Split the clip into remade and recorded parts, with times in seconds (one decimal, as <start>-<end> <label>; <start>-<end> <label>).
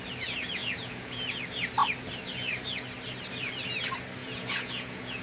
0.0-0.6 recorded; 0.6-1.4 remade; 1.4-4.2 recorded; 4.2-5.2 remade